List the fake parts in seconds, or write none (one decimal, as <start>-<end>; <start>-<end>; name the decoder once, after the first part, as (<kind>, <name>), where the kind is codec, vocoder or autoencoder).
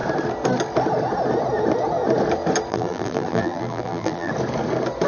2.7-4.3 (vocoder, BigVGAN v2)